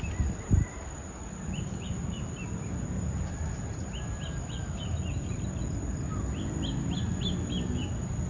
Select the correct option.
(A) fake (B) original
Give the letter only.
B